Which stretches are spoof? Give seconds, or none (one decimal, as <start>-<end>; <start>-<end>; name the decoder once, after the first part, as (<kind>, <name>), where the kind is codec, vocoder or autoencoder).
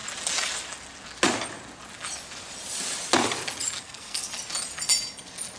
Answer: 3.8-4.3 (codec, SNAC)